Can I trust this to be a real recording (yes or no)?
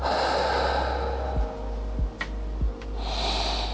yes